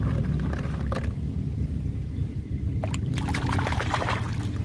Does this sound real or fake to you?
real